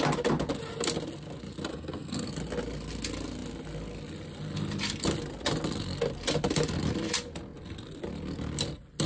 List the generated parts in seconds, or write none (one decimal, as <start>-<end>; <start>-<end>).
1.7-2.3